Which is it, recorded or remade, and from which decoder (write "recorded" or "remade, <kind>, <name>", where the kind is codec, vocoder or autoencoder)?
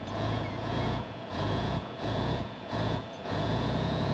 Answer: remade, vocoder, Vocos